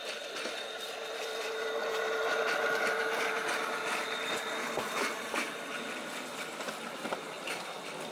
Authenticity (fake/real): real